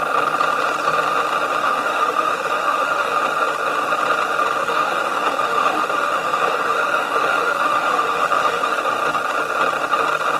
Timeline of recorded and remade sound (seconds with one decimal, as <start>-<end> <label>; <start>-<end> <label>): 0.0-1.6 recorded; 1.6-3.2 remade; 3.2-4.6 recorded; 4.6-8.7 remade; 8.7-10.4 recorded